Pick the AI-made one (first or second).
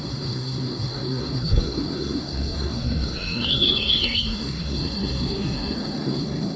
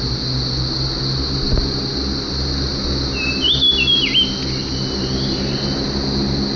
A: first